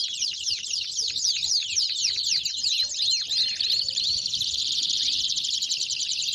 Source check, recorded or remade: remade